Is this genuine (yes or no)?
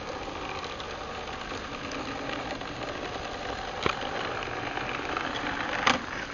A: yes